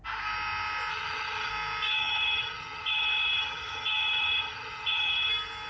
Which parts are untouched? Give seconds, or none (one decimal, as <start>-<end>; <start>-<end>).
0.0-0.9; 1.5-1.9; 5.3-5.7